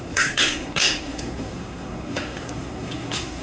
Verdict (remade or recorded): remade